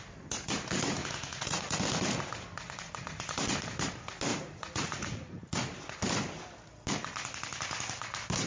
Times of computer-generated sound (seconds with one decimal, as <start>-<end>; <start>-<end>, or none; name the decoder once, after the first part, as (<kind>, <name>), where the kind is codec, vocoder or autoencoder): 1.0-1.6 (vocoder, Vocos); 4.3-5.5